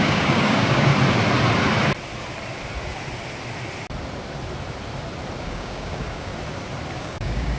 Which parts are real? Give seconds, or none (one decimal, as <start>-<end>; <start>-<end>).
0.9-5.4; 6.3-7.0